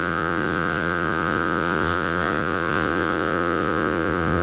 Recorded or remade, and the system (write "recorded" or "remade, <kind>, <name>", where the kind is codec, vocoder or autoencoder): remade, vocoder, Vocos